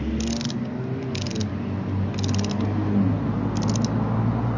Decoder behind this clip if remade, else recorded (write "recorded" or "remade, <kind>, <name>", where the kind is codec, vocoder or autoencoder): recorded